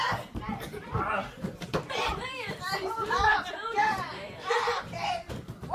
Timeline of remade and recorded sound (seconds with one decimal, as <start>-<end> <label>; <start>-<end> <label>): 0.0-5.7 remade